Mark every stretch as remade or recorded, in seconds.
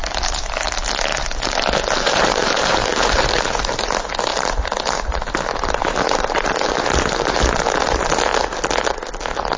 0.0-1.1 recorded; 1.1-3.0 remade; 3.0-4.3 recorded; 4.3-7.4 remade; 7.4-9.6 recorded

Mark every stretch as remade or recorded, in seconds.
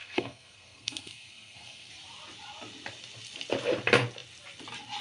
0.0-1.9 remade; 1.9-5.0 recorded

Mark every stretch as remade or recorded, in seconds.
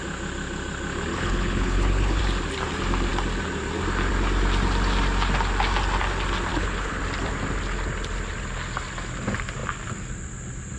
0.0-1.1 recorded; 1.1-2.2 remade; 2.2-6.5 recorded; 6.5-7.0 remade; 7.0-10.8 recorded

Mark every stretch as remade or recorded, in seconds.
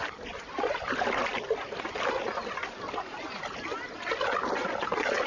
0.0-5.3 recorded